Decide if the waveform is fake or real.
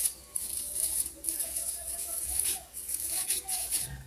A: fake